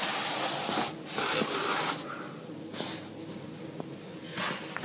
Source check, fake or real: real